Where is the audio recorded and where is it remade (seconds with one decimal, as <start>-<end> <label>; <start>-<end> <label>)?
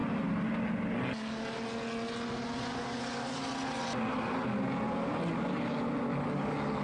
0.0-6.8 recorded